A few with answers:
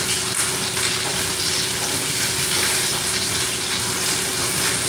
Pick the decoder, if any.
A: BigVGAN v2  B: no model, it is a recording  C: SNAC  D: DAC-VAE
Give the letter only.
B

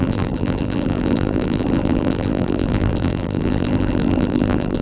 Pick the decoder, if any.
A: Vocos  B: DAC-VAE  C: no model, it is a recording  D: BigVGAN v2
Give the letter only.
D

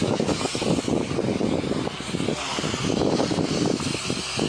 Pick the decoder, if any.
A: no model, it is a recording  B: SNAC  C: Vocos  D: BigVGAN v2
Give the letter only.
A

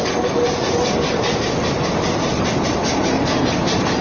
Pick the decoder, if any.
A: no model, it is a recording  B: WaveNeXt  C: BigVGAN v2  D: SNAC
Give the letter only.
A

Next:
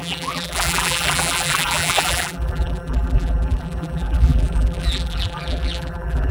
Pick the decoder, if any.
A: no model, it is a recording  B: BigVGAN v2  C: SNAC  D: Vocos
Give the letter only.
B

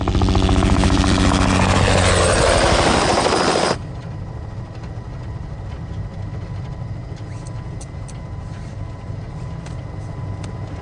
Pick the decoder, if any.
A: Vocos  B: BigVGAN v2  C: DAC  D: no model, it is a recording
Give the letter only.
D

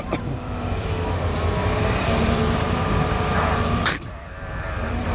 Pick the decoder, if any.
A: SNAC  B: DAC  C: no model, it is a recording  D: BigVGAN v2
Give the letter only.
D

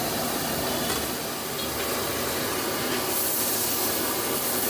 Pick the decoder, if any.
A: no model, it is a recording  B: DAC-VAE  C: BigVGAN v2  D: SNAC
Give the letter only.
A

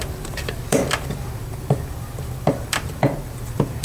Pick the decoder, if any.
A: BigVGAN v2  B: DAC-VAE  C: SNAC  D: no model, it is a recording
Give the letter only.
A